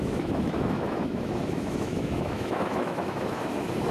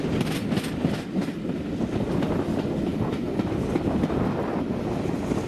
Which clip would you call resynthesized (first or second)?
first